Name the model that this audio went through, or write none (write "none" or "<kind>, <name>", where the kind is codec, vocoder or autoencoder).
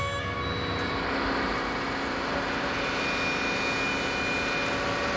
none